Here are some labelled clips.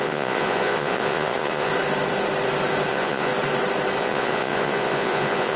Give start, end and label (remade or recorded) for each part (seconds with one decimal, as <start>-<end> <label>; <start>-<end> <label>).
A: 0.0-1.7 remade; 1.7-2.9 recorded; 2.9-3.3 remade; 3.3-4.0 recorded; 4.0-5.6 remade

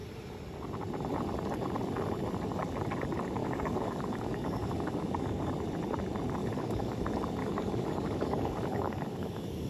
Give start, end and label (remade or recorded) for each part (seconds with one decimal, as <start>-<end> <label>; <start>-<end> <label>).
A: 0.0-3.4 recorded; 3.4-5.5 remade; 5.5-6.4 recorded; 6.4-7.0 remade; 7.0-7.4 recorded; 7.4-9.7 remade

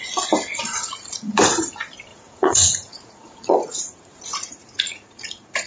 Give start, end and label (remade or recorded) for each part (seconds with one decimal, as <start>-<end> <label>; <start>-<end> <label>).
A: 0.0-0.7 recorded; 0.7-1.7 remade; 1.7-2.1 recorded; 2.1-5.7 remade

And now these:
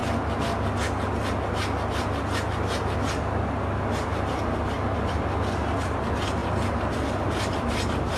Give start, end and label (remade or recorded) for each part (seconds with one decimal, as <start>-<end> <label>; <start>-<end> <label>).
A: 0.0-6.4 recorded; 6.4-8.2 remade

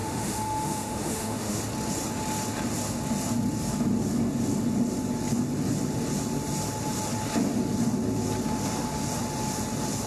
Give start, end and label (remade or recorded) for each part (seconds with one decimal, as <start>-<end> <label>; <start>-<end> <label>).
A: 0.0-1.6 remade; 1.6-10.1 recorded

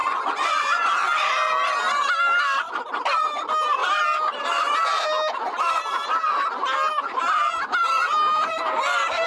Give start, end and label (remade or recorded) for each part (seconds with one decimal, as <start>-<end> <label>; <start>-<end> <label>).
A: 0.0-0.9 remade; 0.9-9.3 recorded